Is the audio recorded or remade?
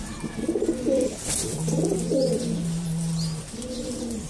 recorded